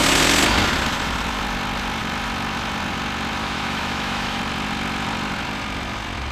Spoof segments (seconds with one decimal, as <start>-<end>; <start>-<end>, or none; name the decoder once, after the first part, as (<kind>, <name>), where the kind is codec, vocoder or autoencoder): 3.4-4.4 (autoencoder, DAC-VAE)